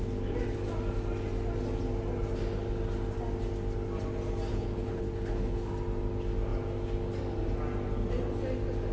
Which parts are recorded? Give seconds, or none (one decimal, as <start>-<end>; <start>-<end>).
0.0-4.5; 5.7-8.9